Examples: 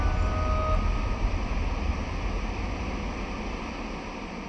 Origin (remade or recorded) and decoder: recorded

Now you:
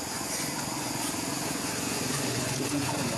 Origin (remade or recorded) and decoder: remade, vocoder, Vocos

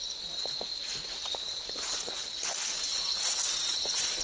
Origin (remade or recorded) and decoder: remade, vocoder, Vocos